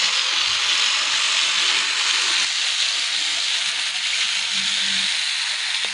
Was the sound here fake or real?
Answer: real